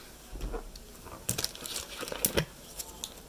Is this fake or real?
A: real